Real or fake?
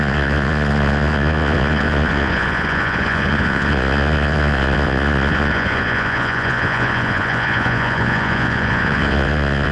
fake